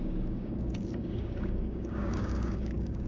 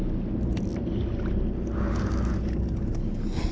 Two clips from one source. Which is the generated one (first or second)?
first